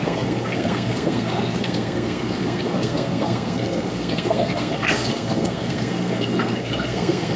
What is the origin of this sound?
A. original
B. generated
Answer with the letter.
B